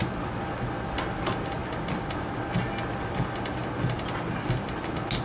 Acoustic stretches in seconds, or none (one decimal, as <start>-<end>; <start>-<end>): 0.0-5.2